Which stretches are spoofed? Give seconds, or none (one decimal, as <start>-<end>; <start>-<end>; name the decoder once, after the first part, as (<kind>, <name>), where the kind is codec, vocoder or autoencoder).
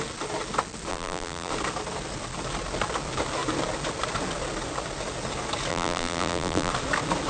0.9-1.5 (vocoder, BigVGAN v2); 5.7-6.7